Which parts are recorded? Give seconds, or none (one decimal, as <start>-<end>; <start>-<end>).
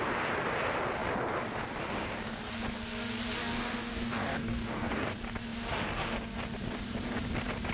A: 0.0-3.4; 5.1-7.7